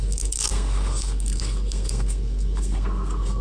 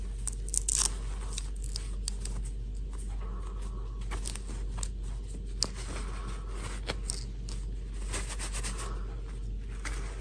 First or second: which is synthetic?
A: first